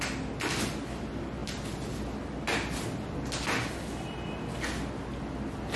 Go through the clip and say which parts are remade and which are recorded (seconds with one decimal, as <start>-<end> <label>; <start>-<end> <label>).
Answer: 0.0-5.8 recorded